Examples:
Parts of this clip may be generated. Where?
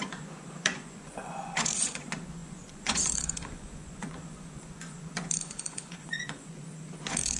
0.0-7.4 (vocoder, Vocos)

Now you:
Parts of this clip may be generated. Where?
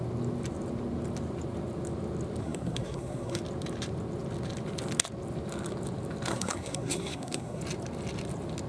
2.4-3.4 (codec, SNAC); 6.3-7.6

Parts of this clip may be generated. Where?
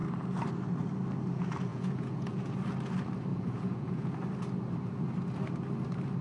1.7-2.5 (vocoder, Vocos); 3.3-4.1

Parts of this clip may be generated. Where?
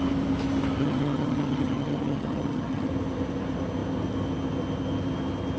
0.8-2.9 (vocoder, HiFi-GAN)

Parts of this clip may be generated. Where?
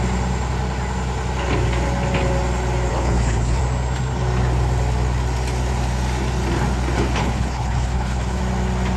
2.9-3.6 (codec, HILCodec); 7.2-8.4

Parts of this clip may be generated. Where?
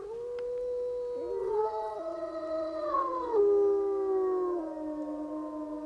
1.4-3.4 (vocoder, WaveNeXt)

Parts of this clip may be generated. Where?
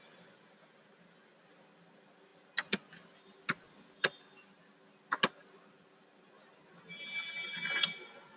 none